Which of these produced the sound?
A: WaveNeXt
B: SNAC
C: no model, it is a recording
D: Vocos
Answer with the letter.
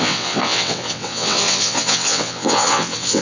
A